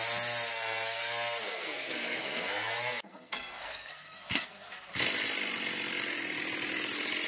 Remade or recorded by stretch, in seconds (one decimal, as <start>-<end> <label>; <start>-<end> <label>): 0.0-0.5 recorded; 0.5-4.9 remade; 4.9-7.3 recorded